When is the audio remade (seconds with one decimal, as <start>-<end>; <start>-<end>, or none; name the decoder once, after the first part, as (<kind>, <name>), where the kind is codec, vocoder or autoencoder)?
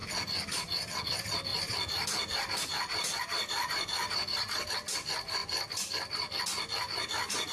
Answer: 1.5-4.7 (vocoder, BigVGAN v2)